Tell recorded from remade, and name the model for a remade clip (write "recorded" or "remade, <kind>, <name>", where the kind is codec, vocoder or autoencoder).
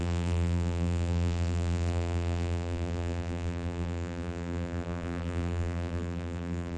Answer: remade, vocoder, BigVGAN v2